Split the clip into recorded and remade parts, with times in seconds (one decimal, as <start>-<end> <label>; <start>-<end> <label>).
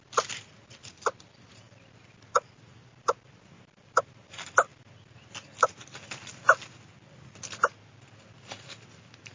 0.0-9.3 recorded